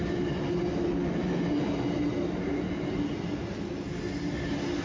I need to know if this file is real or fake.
real